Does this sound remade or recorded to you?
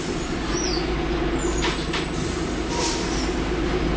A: recorded